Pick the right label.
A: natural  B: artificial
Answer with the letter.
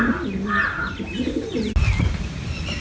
A